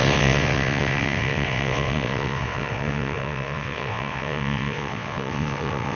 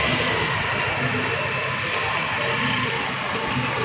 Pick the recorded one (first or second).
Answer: second